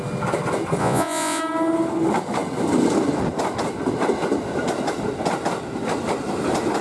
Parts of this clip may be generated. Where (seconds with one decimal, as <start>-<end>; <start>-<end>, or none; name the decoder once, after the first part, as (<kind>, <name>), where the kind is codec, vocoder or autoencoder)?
0.8-1.4 (vocoder, Vocos)